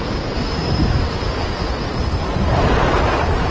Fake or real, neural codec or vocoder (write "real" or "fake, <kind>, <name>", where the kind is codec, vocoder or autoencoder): fake, vocoder, BigVGAN v2